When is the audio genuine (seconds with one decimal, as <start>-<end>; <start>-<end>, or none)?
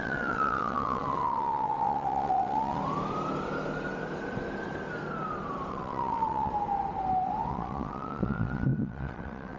2.8-5.7; 6.5-7.5